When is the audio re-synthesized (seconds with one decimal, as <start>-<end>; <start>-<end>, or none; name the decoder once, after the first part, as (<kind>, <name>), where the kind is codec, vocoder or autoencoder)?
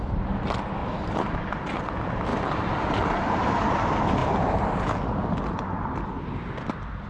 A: 0.8-1.4 (vocoder, BigVGAN v2); 2.3-3.3; 4.2-5.1